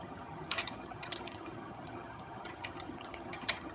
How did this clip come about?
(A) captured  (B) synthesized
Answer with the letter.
B